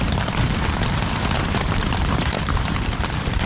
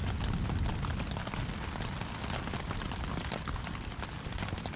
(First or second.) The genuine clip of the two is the second